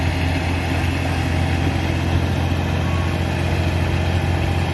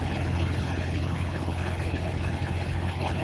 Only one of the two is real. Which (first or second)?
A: first